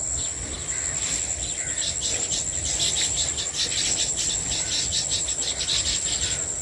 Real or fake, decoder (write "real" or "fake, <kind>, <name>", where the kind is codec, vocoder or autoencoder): real